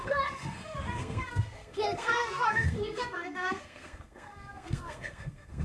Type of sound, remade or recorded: remade